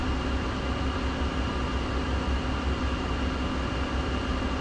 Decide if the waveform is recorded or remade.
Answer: recorded